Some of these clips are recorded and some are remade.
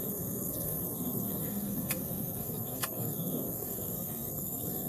remade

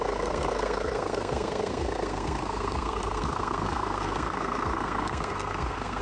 remade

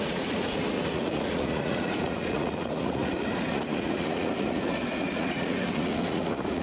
remade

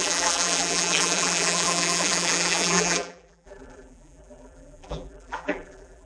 remade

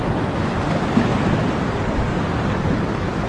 recorded